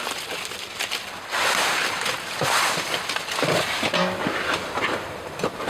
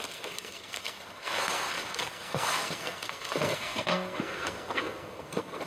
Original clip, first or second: first